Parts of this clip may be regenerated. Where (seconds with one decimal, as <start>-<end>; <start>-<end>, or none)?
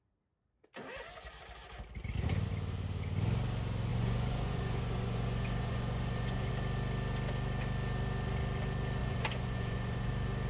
3.9-6.5; 9.0-10.1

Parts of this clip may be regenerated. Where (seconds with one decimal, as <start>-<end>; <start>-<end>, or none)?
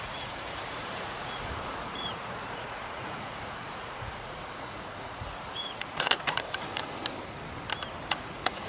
0.0-7.0; 8.1-8.7